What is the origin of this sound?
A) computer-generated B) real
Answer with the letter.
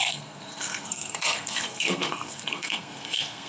A